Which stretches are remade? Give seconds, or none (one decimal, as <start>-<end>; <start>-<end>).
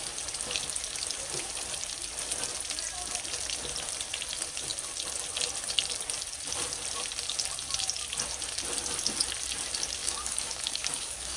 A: 10.0-11.4